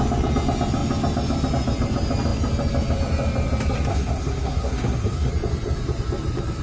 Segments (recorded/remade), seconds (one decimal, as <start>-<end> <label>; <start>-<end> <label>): 0.0-3.9 recorded; 3.9-5.3 remade; 5.3-6.6 recorded